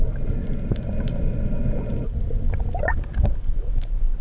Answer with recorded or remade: recorded